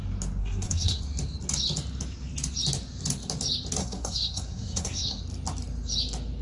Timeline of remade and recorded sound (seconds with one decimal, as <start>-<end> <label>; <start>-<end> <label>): 0.0-0.4 recorded; 0.4-1.0 remade; 1.0-3.8 recorded; 3.8-5.2 remade; 5.2-6.4 recorded